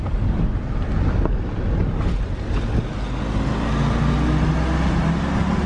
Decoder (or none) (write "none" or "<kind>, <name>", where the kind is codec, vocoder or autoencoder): none